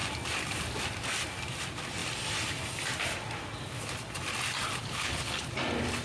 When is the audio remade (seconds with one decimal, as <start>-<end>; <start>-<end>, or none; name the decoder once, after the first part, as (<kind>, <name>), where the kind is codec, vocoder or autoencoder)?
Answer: 4.8-5.5 (codec, HILCodec)